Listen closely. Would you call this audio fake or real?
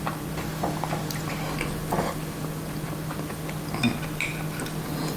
real